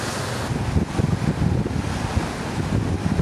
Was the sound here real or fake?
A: real